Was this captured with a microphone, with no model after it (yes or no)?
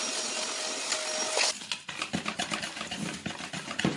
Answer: yes